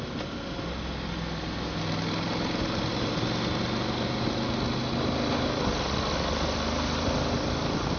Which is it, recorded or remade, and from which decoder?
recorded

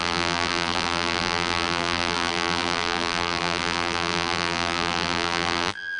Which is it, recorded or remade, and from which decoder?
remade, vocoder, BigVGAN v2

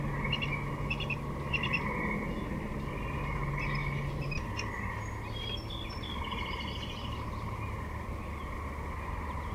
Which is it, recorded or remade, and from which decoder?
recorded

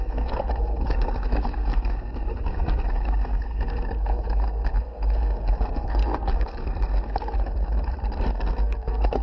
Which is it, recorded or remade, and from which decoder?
remade, codec, SNAC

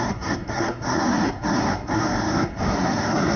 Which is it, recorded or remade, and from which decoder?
remade, codec, SNAC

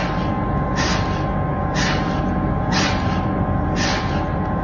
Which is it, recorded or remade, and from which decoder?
recorded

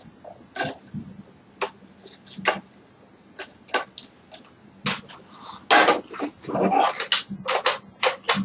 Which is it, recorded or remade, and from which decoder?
recorded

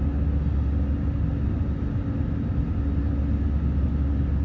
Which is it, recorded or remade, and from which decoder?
recorded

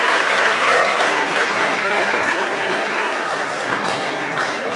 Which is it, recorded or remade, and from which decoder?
remade, codec, SNAC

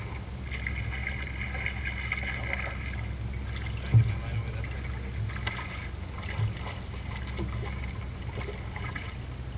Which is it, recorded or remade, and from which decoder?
recorded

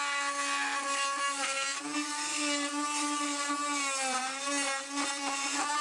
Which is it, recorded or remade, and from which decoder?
recorded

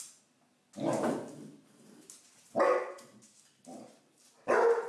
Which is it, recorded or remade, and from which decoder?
recorded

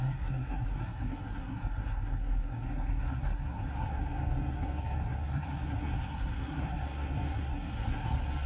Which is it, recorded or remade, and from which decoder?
remade, codec, SNAC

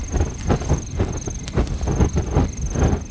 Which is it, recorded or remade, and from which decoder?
recorded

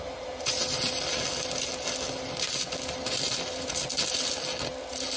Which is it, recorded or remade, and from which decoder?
recorded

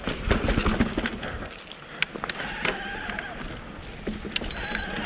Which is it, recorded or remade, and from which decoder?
recorded